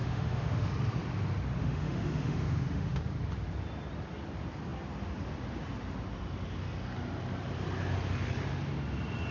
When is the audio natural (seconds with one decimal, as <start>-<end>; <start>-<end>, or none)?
0.7-1.6; 3.0-9.3